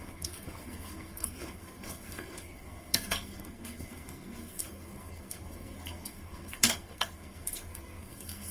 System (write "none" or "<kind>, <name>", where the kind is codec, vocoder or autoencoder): codec, SNAC